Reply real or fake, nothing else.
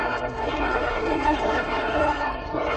fake